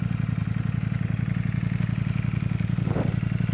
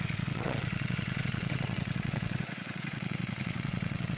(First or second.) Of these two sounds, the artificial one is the second